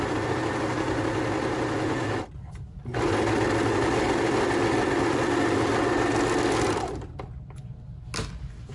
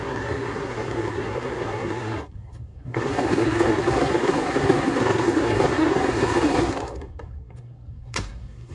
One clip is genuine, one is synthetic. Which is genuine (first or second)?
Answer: first